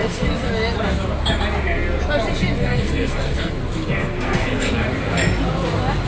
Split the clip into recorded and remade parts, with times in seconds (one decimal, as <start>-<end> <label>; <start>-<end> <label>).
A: 0.0-0.5 remade; 0.5-2.6 recorded; 2.6-3.5 remade; 3.5-4.0 recorded; 4.0-4.7 remade; 4.7-6.1 recorded